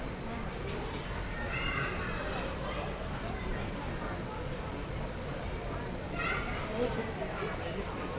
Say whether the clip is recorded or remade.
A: remade